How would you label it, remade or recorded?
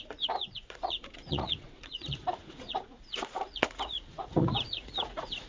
remade